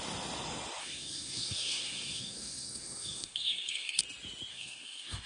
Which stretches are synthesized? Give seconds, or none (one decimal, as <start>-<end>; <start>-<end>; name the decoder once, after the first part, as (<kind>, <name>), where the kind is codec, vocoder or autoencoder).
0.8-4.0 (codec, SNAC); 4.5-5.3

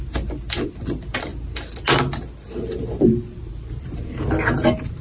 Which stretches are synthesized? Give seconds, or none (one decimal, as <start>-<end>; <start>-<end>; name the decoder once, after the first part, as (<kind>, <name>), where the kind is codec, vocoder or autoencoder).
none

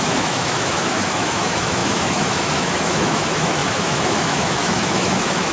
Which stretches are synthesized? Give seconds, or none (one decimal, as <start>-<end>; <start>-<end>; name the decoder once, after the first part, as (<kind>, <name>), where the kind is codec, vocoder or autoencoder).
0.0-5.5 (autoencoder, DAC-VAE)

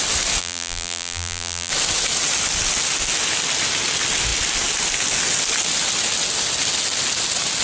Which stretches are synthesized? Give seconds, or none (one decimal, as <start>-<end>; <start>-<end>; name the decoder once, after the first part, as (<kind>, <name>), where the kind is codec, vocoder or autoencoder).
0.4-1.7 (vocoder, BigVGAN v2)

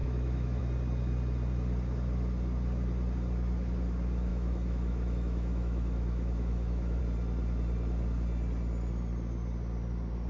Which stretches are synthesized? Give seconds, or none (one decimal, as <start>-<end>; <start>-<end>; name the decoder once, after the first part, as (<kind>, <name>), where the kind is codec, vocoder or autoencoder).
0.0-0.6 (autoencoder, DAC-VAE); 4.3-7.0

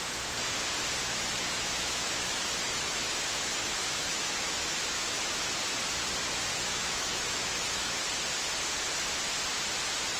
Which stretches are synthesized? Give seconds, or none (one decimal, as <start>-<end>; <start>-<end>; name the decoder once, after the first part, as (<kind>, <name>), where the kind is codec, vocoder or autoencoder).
1.0-3.1 (autoencoder, DAC-VAE); 3.6-5.5; 6.5-8.0